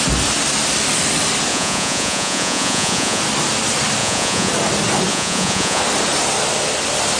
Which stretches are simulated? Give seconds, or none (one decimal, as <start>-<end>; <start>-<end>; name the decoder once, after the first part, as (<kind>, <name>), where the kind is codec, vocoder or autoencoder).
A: 1.5-3.2 (vocoder, Vocos); 4.0-4.5; 5.1-5.8